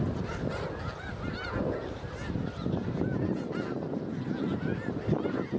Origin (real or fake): real